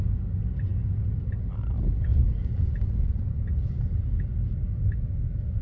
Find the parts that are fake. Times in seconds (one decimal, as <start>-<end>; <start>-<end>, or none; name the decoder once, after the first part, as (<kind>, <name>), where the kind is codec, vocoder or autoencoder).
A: none